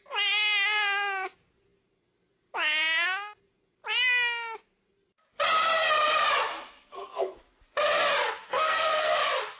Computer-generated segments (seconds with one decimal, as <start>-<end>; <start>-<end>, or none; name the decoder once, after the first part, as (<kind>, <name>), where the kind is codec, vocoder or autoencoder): 6.8-7.4 (codec, SNAC); 8.4-9.1

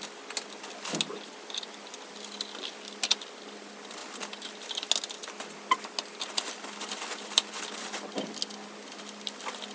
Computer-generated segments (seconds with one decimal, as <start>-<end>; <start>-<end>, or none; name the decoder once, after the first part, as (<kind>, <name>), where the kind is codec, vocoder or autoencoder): none

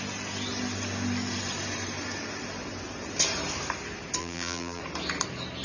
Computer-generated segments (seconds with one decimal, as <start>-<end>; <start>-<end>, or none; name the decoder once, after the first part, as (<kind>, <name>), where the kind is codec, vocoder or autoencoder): 4.2-4.8 (vocoder, BigVGAN v2)

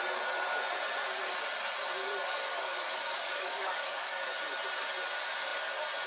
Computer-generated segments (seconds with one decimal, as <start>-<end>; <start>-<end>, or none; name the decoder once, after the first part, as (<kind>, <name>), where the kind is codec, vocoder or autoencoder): 2.0-4.4 (codec, DAC)

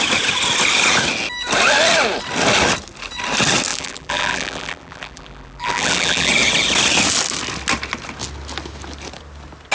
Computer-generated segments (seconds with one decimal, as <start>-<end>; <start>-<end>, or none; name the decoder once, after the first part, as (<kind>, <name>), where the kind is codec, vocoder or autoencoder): 3.7-6.3 (vocoder, BigVGAN v2)

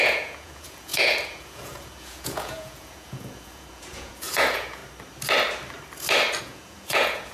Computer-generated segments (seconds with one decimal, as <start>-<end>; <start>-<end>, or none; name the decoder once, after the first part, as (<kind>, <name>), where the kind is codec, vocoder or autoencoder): 0.0-4.8 (vocoder, Vocos); 6.4-7.3